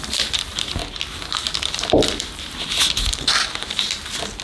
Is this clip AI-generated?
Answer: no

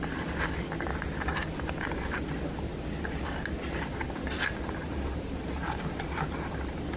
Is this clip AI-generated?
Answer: no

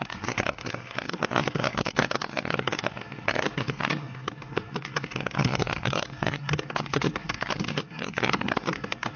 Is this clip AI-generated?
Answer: yes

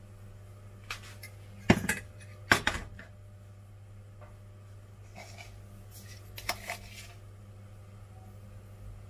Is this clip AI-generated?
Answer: no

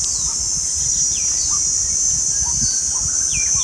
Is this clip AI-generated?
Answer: no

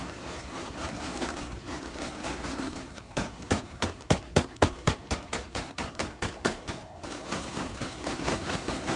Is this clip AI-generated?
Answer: yes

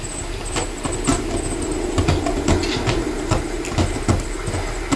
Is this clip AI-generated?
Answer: no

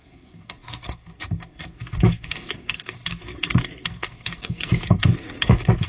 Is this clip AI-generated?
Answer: yes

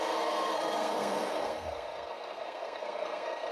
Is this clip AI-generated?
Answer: yes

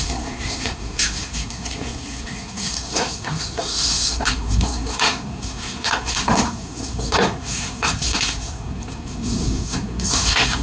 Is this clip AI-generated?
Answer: yes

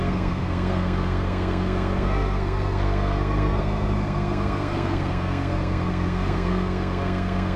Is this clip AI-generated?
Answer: yes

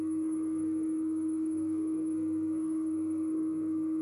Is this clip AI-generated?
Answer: yes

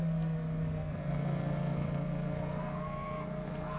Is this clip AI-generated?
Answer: yes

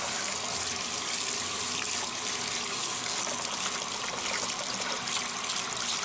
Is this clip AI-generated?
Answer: no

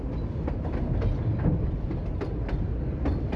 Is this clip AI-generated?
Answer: no